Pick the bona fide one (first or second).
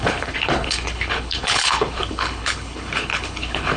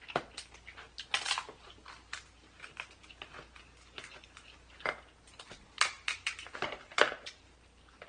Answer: second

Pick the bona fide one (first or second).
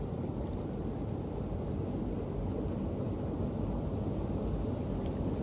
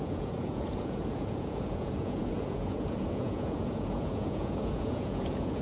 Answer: first